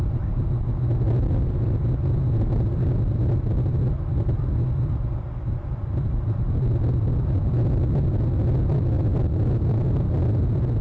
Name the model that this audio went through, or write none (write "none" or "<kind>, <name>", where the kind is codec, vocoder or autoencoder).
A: none